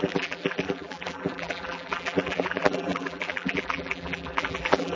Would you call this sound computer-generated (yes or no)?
yes